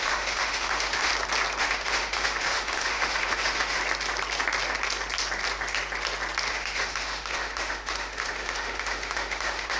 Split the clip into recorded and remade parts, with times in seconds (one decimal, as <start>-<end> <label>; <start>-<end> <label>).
0.0-1.1 remade; 1.1-1.6 recorded; 1.6-3.8 remade; 3.8-6.5 recorded; 6.5-9.8 remade